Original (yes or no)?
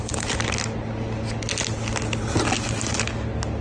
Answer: yes